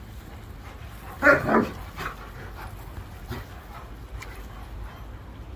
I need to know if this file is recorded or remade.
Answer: recorded